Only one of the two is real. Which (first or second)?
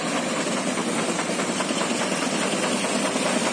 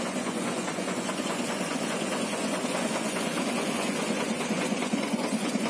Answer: first